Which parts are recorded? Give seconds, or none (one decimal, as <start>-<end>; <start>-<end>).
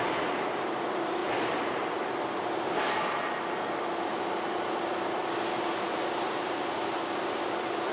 0.0-7.9